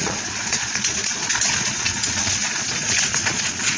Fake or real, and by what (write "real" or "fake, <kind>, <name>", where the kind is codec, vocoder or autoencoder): fake, vocoder, Vocos